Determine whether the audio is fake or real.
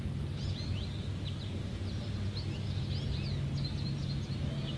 real